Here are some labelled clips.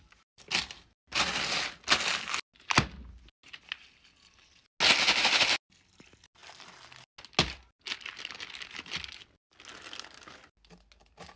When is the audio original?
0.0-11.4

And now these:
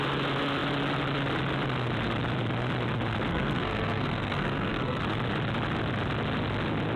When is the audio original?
0.0-3.3; 5.0-7.0

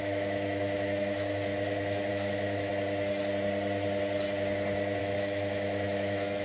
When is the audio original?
1.5-2.1; 2.7-5.0

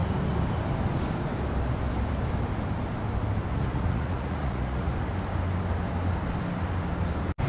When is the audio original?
0.0-3.5; 4.9-7.5

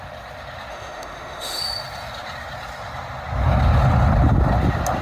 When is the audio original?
0.0-0.7; 1.6-5.0

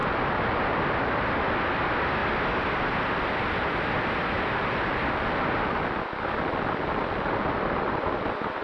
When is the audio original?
0.0-8.6

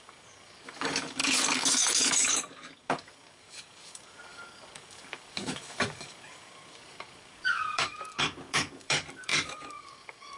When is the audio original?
none

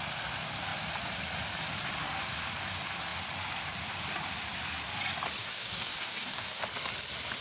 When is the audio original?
0.0-5.4; 6.6-7.4